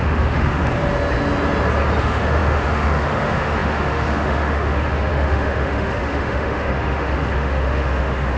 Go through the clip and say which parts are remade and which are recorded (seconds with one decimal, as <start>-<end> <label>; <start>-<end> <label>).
0.0-0.6 remade; 0.6-2.0 recorded; 2.0-8.4 remade